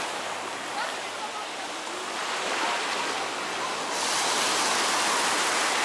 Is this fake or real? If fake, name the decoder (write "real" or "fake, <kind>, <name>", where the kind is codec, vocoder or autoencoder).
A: real